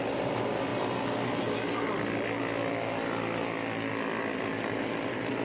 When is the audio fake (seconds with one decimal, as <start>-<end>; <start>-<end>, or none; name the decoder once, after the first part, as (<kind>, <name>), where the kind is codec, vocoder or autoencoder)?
0.0-0.7 (vocoder, BigVGAN v2); 3.9-5.4